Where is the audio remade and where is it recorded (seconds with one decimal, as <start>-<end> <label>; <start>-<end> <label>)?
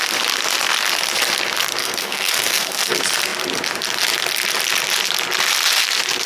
0.0-1.8 recorded; 1.8-2.9 remade; 2.9-6.3 recorded